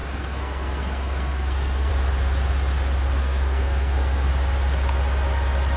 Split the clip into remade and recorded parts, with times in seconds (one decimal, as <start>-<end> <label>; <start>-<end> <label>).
0.0-1.9 remade; 1.9-3.2 recorded; 3.2-4.3 remade; 4.3-5.8 recorded